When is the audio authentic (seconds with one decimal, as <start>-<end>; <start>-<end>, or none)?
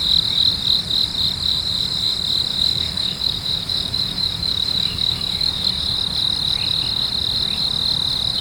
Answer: 0.0-2.5; 5.7-8.4